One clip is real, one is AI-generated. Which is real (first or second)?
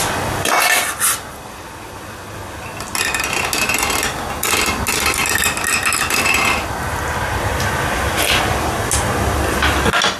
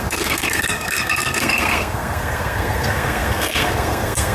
first